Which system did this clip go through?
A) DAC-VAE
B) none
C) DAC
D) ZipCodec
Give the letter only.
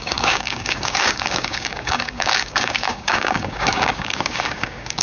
C